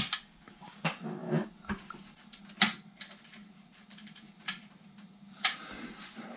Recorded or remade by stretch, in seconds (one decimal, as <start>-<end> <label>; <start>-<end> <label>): 0.0-1.2 recorded; 1.2-2.4 remade; 2.4-3.4 recorded; 3.4-6.4 remade